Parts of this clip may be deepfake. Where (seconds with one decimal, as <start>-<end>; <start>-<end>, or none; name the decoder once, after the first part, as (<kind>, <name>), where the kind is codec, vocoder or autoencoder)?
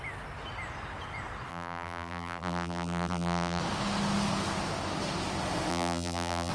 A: 1.5-3.6 (vocoder, BigVGAN v2); 5.7-6.5